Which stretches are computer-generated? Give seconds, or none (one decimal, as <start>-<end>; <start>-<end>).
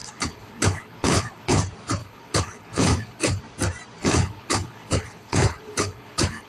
0.0-1.6; 2.0-3.4; 4.0-6.5